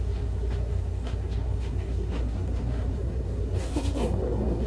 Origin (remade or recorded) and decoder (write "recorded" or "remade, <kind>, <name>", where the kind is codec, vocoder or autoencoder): remade, codec, SNAC